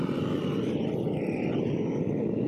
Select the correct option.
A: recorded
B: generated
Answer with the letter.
A